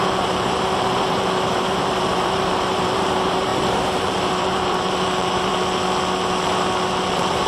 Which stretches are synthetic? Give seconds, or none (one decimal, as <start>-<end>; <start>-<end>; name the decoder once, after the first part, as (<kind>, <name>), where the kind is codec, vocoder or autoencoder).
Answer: 0.0-5.5 (vocoder, BigVGAN v2); 7.1-7.5